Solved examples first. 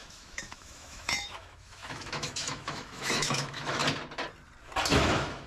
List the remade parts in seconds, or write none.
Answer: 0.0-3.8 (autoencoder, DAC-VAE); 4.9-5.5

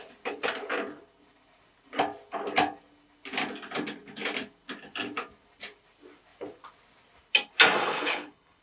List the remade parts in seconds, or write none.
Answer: 7.8-8.6 (codec, HILCodec)

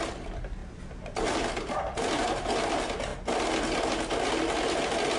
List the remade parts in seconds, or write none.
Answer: 0.0-3.1 (vocoder, BigVGAN v2)